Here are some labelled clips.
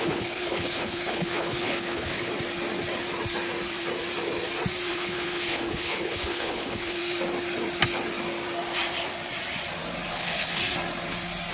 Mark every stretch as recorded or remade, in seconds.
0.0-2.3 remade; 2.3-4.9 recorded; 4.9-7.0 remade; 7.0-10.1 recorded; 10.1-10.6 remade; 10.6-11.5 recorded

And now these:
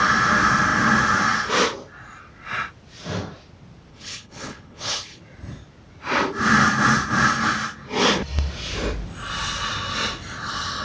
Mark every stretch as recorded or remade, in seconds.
0.0-3.9 recorded; 3.9-5.2 remade; 5.2-10.8 recorded